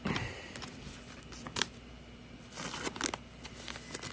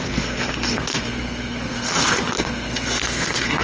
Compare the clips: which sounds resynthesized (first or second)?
second